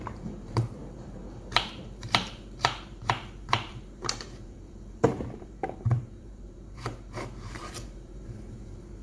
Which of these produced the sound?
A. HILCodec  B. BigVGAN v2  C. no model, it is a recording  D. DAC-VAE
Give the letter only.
B